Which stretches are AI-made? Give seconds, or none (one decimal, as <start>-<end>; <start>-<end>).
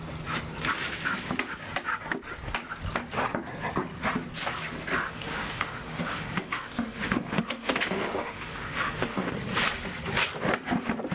5.0-9.3